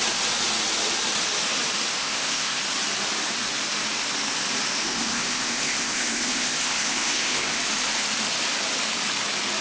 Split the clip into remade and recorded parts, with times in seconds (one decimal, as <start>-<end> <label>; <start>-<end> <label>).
0.0-2.0 recorded; 2.0-2.6 remade; 2.6-4.8 recorded; 4.8-7.6 remade; 7.6-9.6 recorded